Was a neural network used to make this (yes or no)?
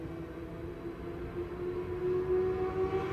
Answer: no